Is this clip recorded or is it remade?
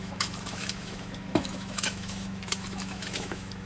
remade